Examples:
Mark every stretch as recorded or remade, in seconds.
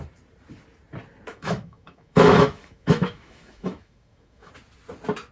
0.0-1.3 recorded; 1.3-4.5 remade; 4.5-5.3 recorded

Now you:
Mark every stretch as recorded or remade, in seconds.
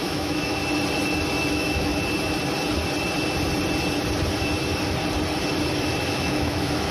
0.0-0.6 remade; 0.6-1.5 recorded; 1.5-1.9 remade; 1.9-6.0 recorded; 6.0-6.9 remade